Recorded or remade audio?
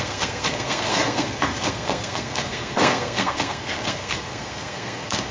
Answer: remade